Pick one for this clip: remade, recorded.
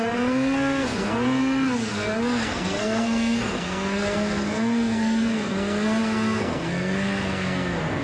remade